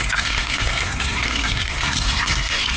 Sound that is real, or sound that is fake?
fake